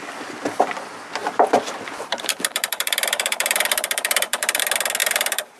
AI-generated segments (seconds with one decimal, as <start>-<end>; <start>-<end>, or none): 1.2-4.6; 5.0-5.6